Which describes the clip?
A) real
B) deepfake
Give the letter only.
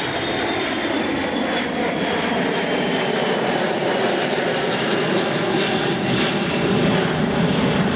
A